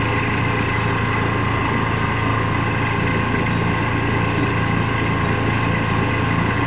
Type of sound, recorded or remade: recorded